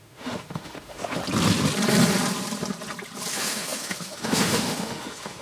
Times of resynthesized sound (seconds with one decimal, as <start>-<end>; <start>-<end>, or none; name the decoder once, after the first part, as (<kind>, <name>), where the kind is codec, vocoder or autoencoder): 0.0-1.2 (autoencoder, DAC-VAE); 3.3-5.4